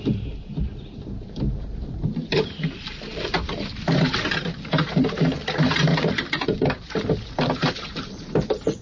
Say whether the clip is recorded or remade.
remade